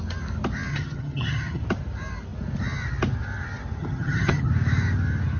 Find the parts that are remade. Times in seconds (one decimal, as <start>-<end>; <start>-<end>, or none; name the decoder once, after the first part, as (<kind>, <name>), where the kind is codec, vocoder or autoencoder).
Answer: 0.7-1.6 (vocoder, HiFi-GAN); 3.8-4.5

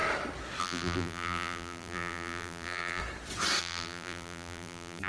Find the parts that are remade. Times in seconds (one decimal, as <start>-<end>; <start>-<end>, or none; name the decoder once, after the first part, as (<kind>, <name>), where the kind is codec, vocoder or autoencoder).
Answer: 0.6-3.0 (vocoder, BigVGAN v2); 3.6-5.1